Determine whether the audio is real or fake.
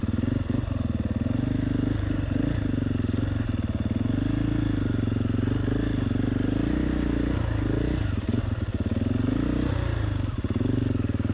real